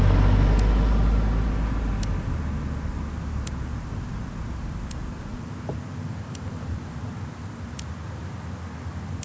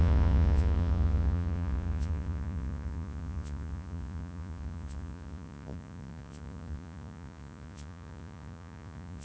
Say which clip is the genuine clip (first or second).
first